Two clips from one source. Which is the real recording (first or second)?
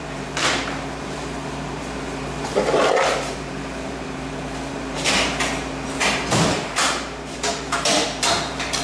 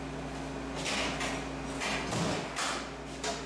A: second